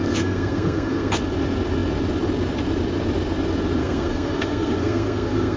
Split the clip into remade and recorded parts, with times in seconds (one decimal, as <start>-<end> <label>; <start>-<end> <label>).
0.0-1.2 remade; 1.2-3.8 recorded; 3.8-5.6 remade